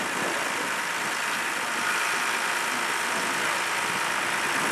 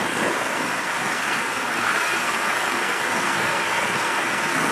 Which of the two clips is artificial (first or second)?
second